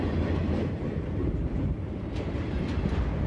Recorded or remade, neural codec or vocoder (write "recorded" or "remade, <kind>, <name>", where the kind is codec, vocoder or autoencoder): remade, vocoder, BigVGAN v2